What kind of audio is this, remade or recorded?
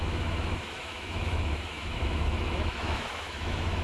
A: remade